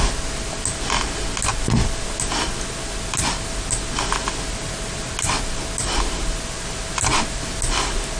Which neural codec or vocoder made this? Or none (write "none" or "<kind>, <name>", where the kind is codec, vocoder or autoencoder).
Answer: none